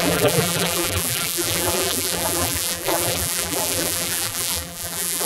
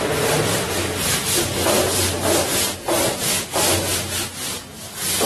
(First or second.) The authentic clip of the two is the second